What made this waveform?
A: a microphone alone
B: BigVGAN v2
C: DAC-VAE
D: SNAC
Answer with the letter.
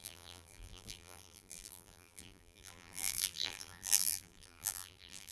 B